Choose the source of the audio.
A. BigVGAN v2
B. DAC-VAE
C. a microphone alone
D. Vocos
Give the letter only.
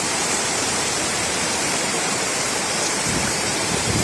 A